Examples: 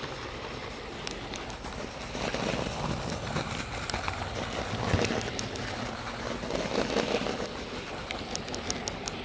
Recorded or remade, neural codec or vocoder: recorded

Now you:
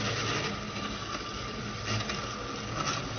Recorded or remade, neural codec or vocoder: recorded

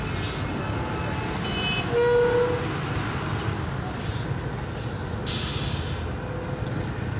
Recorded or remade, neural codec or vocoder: recorded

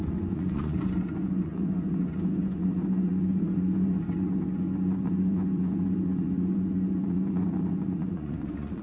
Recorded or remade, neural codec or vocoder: remade, vocoder, Vocos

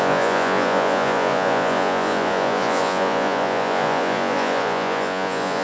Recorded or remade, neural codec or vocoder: remade, vocoder, Vocos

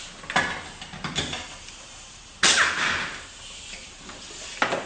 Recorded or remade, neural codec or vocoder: recorded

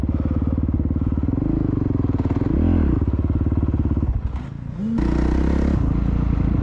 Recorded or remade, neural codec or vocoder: recorded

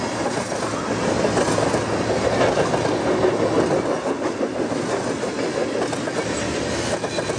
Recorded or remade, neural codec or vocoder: recorded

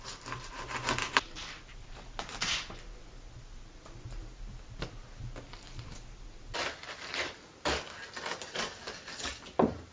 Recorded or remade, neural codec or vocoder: recorded